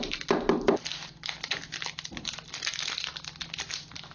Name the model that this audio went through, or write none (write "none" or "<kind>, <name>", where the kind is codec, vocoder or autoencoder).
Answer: none